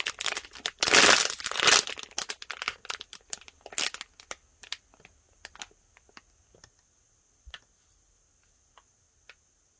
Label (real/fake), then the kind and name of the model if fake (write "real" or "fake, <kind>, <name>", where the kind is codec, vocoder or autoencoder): real